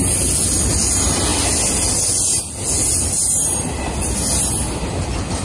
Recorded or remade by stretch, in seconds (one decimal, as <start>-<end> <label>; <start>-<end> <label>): 0.0-5.4 recorded